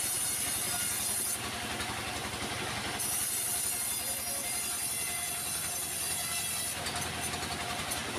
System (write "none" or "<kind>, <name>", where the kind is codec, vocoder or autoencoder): none